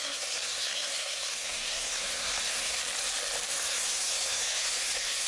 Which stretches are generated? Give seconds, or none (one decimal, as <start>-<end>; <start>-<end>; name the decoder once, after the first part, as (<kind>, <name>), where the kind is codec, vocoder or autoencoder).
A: 0.0-2.8 (codec, SNAC); 3.5-5.3